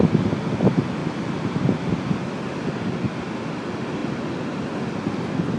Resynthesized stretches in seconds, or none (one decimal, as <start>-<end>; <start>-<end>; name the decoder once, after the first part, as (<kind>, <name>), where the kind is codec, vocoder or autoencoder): none